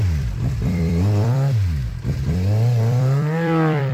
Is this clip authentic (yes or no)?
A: no